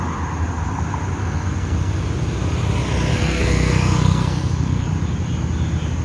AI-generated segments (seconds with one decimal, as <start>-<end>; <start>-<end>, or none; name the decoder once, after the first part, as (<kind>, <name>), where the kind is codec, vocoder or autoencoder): 1.2-2.0 (codec, SNAC); 3.1-4.9